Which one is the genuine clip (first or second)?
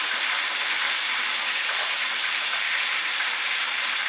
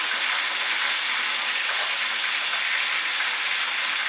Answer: second